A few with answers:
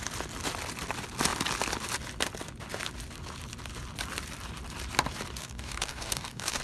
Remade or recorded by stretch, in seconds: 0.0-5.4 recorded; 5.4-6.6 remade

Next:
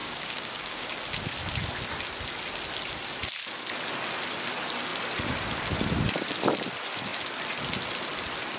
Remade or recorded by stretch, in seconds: 0.0-1.0 remade; 1.0-8.6 recorded